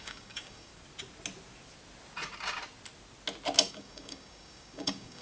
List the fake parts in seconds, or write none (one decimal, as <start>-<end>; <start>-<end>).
0.0-0.7; 3.7-5.2